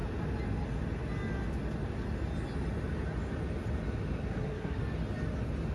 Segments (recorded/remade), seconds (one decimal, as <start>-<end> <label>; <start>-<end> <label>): 0.0-4.3 recorded; 4.3-4.8 remade; 4.8-5.7 recorded